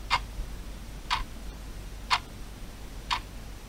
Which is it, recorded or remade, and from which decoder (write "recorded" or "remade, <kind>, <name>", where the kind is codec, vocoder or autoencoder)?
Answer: recorded